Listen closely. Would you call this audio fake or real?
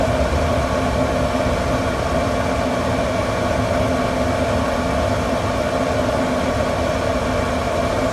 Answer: real